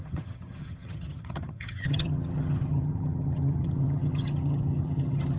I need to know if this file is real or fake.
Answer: fake